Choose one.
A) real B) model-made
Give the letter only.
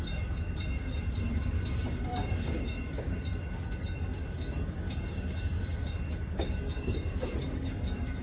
B